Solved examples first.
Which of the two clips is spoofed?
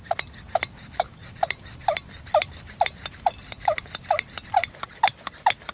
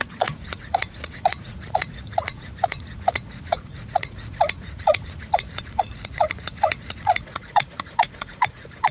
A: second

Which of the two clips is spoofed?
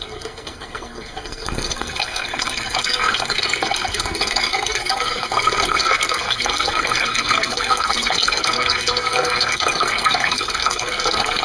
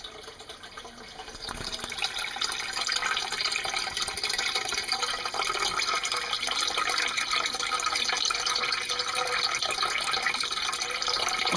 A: first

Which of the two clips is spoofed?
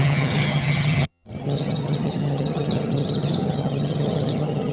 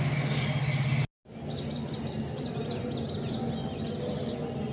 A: first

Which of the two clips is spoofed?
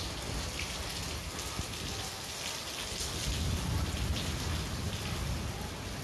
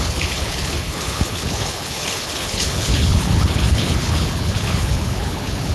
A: second